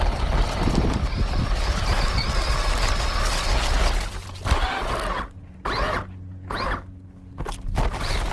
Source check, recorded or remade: recorded